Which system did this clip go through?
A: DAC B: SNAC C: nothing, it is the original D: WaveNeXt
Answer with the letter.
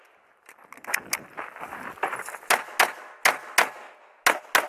C